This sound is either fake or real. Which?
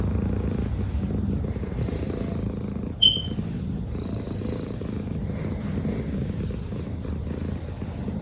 real